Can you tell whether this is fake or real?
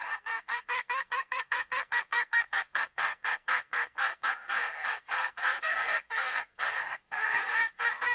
fake